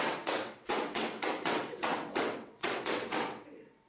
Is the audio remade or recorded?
remade